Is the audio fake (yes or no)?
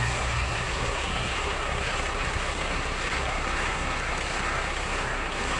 yes